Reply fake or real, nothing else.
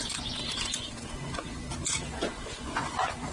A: fake